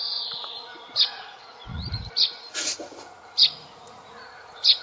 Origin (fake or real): fake